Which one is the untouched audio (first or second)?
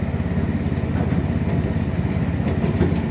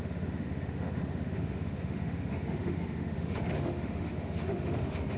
first